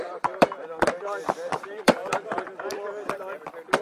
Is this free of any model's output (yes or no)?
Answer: no